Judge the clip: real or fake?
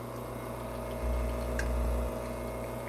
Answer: real